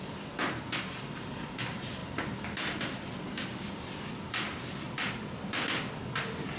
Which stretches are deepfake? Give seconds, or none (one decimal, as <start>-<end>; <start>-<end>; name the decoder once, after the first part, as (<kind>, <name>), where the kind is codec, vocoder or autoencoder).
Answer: none